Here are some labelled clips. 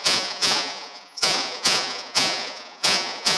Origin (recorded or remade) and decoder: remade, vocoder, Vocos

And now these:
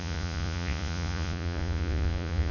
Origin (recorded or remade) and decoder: remade, vocoder, Vocos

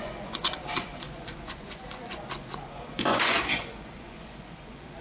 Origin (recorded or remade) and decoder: remade, vocoder, Vocos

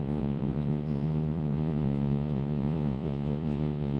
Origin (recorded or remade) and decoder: remade, vocoder, Vocos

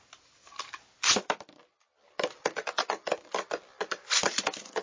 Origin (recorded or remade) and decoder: recorded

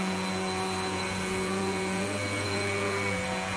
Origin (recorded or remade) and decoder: remade, vocoder, Vocos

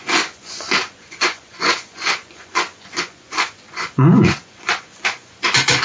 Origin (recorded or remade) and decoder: remade, vocoder, Vocos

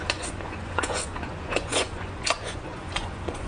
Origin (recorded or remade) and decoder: remade, vocoder, Vocos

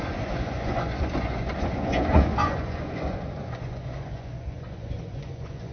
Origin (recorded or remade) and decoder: remade, vocoder, Vocos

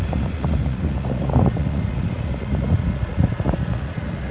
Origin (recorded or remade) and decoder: remade, vocoder, Vocos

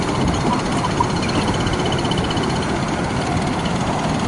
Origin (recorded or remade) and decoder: recorded